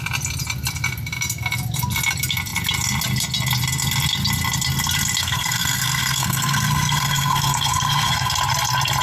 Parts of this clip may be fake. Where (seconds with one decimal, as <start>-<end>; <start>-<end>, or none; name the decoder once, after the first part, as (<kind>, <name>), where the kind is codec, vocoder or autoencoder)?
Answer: 5.2-8.3 (codec, SNAC)